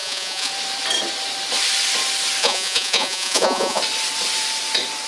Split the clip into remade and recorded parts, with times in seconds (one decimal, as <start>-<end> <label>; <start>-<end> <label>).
0.0-0.5 remade; 0.5-2.4 recorded; 2.4-3.8 remade; 3.8-5.1 recorded